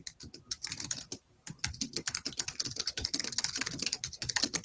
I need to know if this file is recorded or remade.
recorded